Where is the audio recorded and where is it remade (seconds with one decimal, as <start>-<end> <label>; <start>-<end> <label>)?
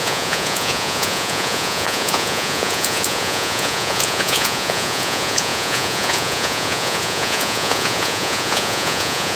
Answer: 0.0-9.4 remade